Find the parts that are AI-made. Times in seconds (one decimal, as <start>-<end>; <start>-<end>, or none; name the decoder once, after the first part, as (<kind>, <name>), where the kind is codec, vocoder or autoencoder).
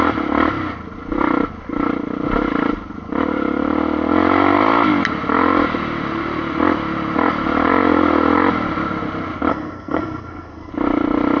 9.5-10.7 (codec, SNAC)